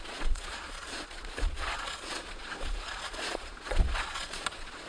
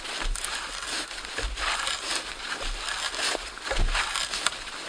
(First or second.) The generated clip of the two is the first